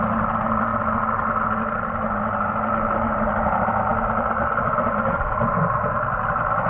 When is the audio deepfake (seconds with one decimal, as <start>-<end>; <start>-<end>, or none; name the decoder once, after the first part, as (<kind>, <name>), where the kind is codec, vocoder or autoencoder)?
none